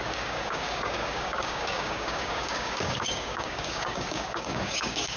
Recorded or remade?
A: remade